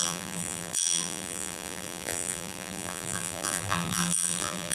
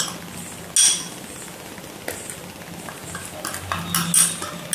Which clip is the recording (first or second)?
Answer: second